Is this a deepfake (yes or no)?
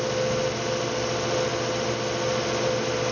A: no